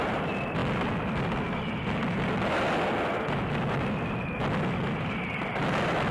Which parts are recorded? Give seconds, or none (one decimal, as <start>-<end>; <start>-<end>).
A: 0.0-6.1

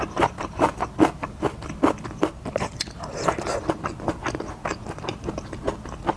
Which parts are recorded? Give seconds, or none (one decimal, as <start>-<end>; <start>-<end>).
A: 0.0-6.2